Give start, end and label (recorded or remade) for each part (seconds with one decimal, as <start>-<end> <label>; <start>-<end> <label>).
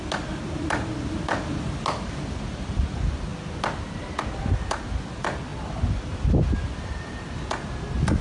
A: 0.0-8.2 recorded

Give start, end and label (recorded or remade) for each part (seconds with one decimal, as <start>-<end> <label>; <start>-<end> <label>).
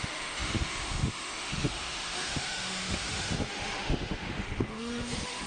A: 0.0-5.5 remade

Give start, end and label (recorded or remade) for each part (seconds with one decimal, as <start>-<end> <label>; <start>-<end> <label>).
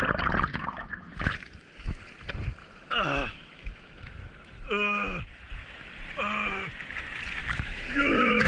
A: 0.0-0.5 recorded; 0.5-2.0 remade; 2.0-2.6 recorded; 2.6-5.4 remade; 5.4-7.4 recorded; 7.4-8.5 remade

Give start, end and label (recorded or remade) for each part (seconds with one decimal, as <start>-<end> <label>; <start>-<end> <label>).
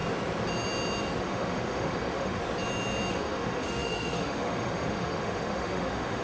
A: 0.0-1.2 recorded; 1.2-2.4 remade; 2.4-3.1 recorded; 3.1-6.2 remade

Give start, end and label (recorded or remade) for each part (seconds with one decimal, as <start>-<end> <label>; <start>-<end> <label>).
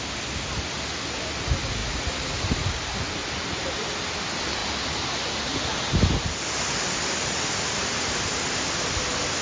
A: 0.0-9.4 recorded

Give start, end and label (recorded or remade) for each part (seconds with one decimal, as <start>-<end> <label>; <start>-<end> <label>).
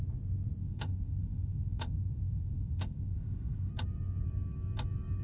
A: 0.0-0.6 recorded; 0.6-3.7 remade; 3.7-5.2 recorded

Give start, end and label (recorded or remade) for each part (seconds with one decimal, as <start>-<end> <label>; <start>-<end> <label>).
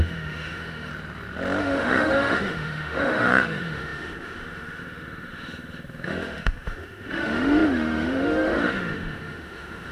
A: 0.0-0.9 remade; 0.9-1.6 recorded; 1.6-9.9 remade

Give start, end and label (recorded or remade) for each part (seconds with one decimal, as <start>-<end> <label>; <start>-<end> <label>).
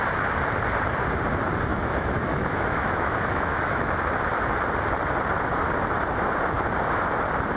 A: 0.0-1.7 recorded; 1.7-4.0 remade; 4.0-7.6 recorded